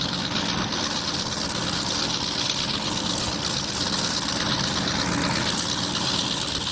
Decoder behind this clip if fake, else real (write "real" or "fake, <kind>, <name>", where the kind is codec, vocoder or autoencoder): real